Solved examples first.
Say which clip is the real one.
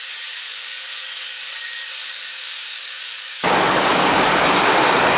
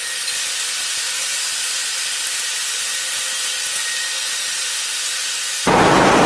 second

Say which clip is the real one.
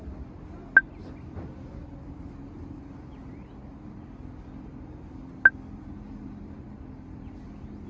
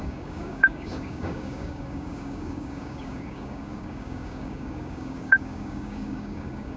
first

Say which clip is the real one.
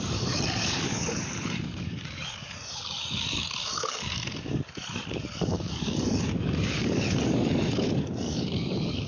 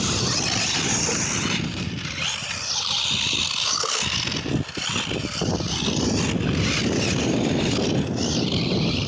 second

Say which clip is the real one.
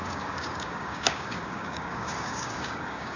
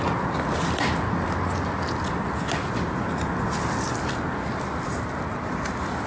second